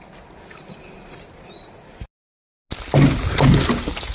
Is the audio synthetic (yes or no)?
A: no